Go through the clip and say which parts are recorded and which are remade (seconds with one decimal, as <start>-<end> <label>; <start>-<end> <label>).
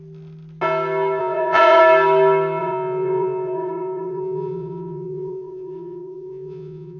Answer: 0.0-1.2 recorded; 1.2-1.8 remade; 1.8-2.6 recorded; 2.6-7.0 remade